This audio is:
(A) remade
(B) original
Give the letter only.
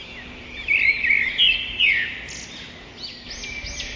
B